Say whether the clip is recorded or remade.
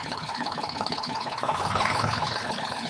remade